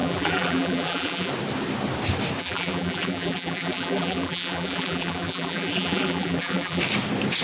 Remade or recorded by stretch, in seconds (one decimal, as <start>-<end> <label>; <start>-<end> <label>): 0.0-1.3 remade; 1.3-2.4 recorded; 2.4-6.8 remade; 6.8-7.4 recorded